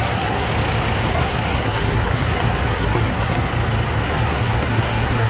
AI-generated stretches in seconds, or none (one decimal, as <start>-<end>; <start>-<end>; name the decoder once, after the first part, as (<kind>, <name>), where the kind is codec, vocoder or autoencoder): 0.0-0.5 (codec, SNAC); 1.1-3.5; 4.0-5.3